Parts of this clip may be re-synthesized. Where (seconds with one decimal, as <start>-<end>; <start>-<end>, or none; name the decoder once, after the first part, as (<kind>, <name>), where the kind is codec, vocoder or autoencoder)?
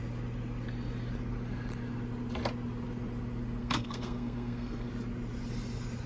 3.6-4.9 (codec, SNAC)